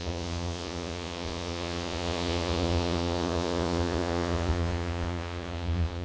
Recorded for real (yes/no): no